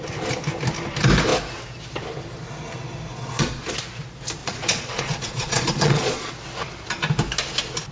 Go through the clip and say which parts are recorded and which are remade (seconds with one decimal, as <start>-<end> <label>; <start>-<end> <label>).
0.0-3.1 recorded; 3.1-3.6 remade; 3.6-4.4 recorded; 4.4-6.3 remade; 6.3-7.9 recorded